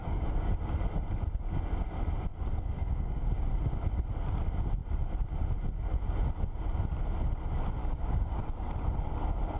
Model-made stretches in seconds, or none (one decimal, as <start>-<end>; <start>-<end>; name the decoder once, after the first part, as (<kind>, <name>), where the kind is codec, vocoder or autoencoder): 0.0-0.5 (codec, DAC); 2.3-3.5; 7.8-8.7